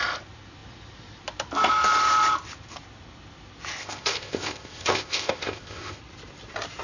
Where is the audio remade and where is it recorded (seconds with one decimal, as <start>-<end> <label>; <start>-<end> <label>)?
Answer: 0.0-3.8 recorded; 3.8-6.0 remade; 6.0-6.8 recorded